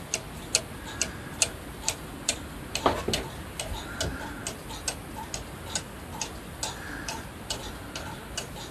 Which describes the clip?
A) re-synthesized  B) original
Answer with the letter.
B